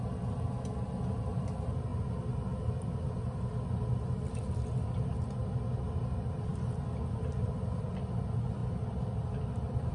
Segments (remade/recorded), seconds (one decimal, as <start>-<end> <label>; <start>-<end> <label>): 0.0-8.6 recorded; 8.6-9.9 remade